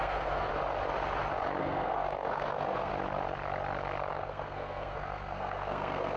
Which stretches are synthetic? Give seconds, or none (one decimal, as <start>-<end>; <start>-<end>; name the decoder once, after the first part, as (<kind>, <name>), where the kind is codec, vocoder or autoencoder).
0.0-0.5 (codec, SNAC); 1.6-2.9; 4.1-6.2